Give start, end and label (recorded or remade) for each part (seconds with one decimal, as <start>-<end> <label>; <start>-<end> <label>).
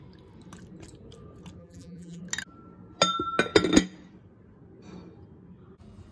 0.0-1.6 recorded; 1.6-2.2 remade; 2.2-6.1 recorded